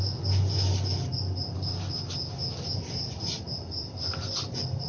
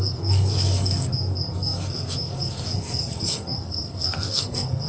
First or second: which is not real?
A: second